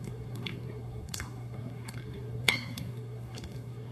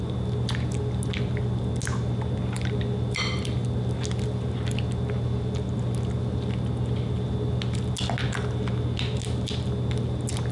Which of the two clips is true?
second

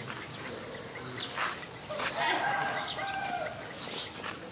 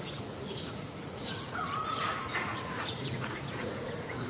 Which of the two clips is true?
first